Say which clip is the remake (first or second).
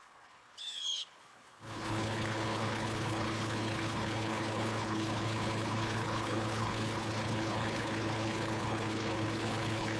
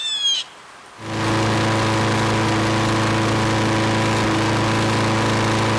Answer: first